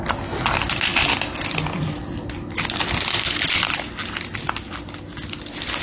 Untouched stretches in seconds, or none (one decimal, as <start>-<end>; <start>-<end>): 0.0-5.8